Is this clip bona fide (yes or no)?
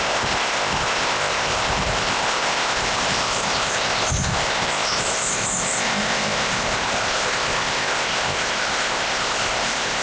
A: no